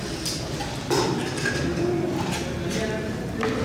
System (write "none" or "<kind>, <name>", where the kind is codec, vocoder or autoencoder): none